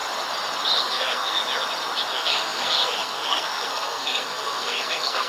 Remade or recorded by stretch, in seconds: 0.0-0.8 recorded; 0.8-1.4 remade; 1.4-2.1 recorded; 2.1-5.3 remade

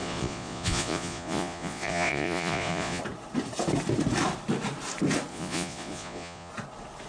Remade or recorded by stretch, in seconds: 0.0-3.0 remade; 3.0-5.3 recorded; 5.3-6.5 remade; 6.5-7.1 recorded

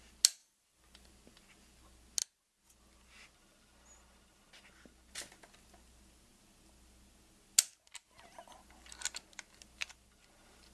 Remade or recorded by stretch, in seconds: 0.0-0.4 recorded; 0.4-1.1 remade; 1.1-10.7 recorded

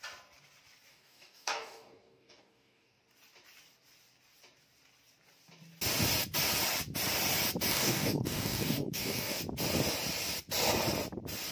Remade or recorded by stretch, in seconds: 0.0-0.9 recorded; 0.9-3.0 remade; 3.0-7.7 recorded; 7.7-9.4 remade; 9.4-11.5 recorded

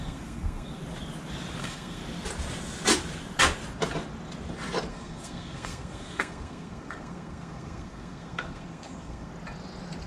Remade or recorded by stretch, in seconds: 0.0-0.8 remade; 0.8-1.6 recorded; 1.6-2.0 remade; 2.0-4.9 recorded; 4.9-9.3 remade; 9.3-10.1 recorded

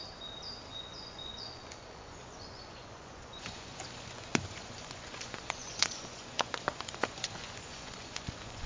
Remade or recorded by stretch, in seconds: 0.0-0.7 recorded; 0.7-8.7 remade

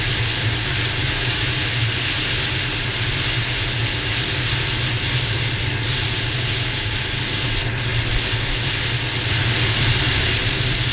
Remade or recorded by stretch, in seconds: 0.0-1.0 recorded; 1.0-1.5 remade; 1.5-10.9 recorded